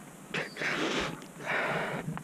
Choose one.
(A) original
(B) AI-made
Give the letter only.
A